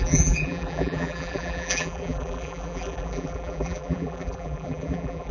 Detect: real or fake fake